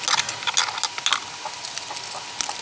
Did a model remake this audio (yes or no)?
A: no